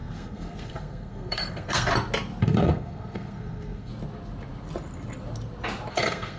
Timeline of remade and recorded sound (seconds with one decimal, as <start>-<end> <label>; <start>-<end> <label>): 0.0-1.9 remade; 1.9-2.4 recorded; 2.4-3.9 remade; 3.9-5.9 recorded; 5.9-6.4 remade